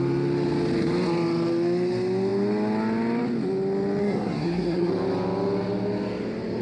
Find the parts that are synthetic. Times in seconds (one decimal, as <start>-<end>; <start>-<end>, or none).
4.0-4.9